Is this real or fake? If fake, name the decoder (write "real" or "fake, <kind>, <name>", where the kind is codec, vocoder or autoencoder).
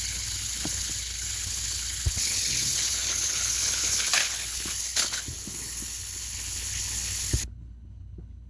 fake, codec, HILCodec